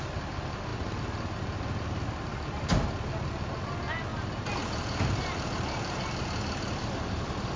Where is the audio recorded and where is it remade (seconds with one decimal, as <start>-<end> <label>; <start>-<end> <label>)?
0.0-4.1 recorded; 4.1-6.2 remade; 6.2-7.6 recorded